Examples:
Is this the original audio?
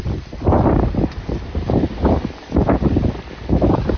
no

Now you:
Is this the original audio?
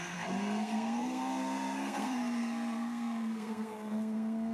no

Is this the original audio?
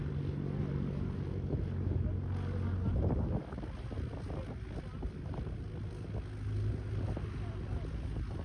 yes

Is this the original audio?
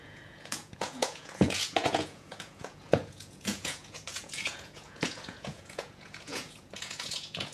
no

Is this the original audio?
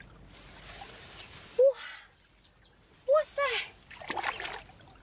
yes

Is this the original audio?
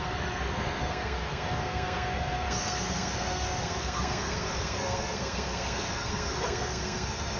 no